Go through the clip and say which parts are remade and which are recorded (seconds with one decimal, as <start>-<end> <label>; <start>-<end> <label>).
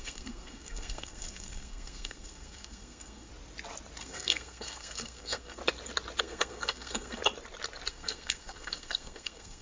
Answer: 0.0-3.3 remade; 3.3-4.0 recorded; 4.0-5.6 remade; 5.6-6.2 recorded; 6.2-7.2 remade; 7.2-7.9 recorded; 7.9-9.6 remade